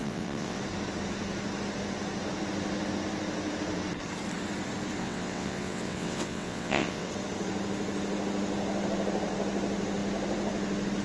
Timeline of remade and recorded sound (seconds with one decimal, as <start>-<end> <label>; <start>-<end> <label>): 0.0-0.6 remade; 0.6-5.0 recorded; 5.0-7.1 remade; 7.1-11.0 recorded